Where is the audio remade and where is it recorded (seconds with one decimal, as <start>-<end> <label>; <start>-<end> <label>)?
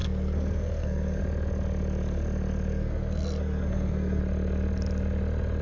0.0-1.2 remade; 1.2-2.7 recorded; 2.7-4.2 remade; 4.2-5.6 recorded